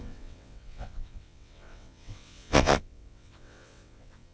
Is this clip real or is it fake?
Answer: fake